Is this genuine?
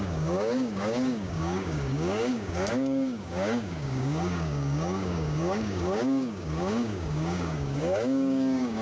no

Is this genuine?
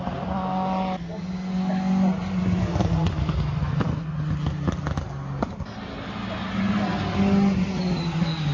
yes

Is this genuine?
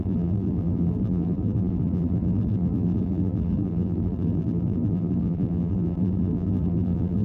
no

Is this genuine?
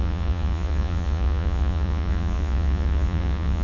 no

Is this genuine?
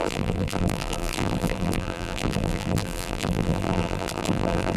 no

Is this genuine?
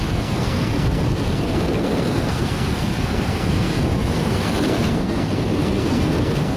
no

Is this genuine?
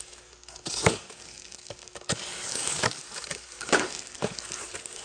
no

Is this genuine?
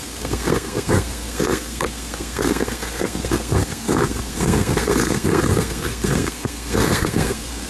no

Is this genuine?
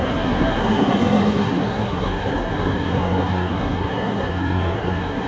no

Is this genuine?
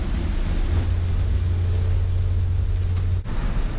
yes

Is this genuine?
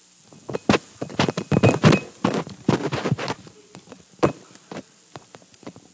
yes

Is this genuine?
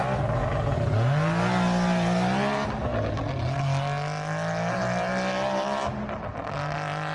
yes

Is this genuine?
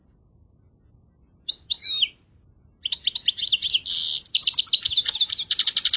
yes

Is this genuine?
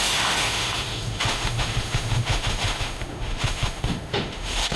no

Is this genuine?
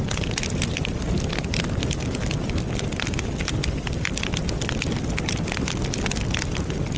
yes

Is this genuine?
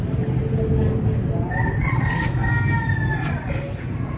yes